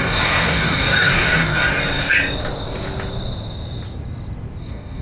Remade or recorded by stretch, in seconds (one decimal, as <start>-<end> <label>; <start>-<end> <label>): 0.0-1.6 remade; 1.6-4.6 recorded; 4.6-5.0 remade